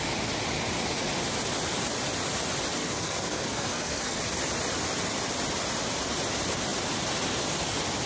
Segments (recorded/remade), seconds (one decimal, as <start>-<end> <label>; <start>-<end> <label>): 0.0-2.8 recorded; 2.8-4.2 remade; 4.2-8.1 recorded